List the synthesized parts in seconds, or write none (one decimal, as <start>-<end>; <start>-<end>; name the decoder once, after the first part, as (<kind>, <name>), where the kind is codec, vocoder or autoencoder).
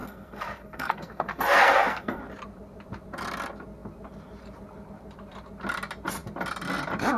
0.0-2.2 (codec, SNAC)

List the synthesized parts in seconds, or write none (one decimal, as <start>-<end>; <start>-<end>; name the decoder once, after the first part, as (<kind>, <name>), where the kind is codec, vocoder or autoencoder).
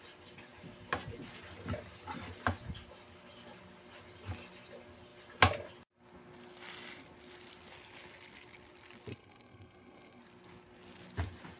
9.1-10.2 (codec, SNAC)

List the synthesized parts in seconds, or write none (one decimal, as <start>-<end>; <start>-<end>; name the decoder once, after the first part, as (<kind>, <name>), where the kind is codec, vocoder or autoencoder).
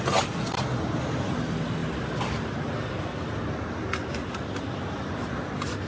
none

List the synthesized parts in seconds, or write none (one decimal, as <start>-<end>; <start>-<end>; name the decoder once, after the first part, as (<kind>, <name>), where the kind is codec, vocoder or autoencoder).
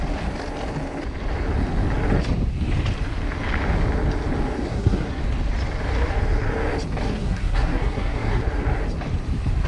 4.7-5.2 (codec, SNAC); 7.0-8.4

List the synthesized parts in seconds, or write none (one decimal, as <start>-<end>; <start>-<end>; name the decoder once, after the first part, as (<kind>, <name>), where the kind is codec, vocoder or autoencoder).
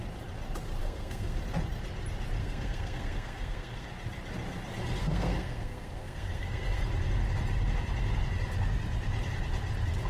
0.8-1.4 (codec, SNAC); 2.4-3.9; 5.0-6.8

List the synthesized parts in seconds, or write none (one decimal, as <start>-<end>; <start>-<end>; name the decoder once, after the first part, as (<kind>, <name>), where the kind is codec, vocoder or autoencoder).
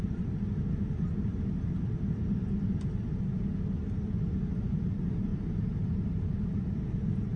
none